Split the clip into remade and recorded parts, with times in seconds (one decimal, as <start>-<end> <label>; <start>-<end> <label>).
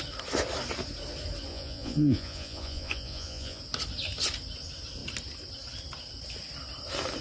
0.0-1.5 recorded; 1.5-3.6 remade; 3.6-7.2 recorded